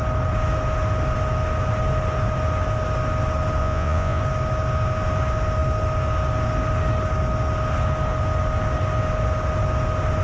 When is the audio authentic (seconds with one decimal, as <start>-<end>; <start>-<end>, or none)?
0.0-3.6; 4.2-10.2